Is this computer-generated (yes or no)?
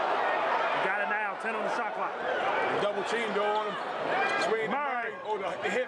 no